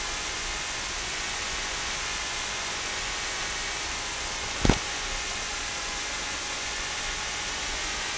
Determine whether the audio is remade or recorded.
remade